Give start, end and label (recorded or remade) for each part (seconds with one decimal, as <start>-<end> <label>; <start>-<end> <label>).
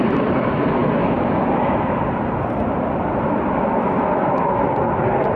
0.0-5.4 recorded